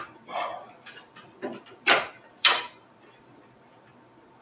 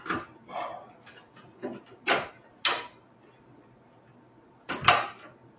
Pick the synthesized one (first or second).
first